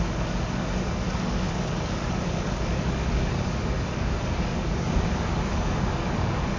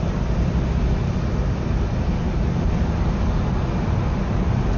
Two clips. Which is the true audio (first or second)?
second